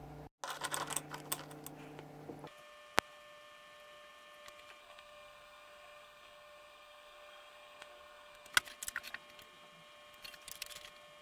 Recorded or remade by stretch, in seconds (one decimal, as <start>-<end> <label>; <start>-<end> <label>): 0.0-4.8 recorded; 4.8-8.5 remade; 8.5-11.2 recorded